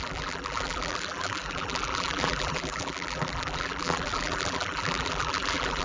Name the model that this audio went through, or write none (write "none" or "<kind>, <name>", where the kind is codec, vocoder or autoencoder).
vocoder, BigVGAN v2